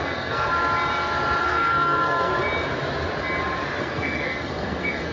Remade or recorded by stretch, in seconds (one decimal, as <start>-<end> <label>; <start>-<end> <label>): 0.0-0.5 remade; 0.5-1.4 recorded; 1.4-2.3 remade; 2.3-3.8 recorded; 3.8-5.1 remade